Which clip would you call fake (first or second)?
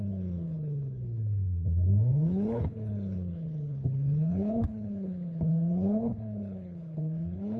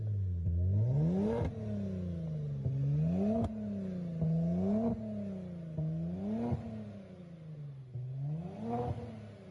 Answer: first